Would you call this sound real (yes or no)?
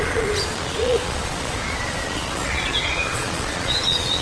no